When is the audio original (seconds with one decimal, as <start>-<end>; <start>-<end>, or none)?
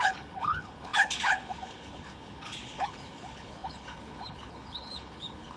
none